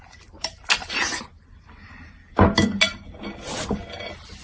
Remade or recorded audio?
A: recorded